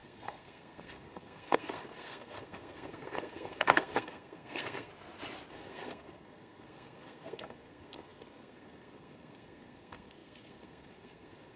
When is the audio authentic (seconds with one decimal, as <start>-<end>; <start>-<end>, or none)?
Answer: 4.9-5.5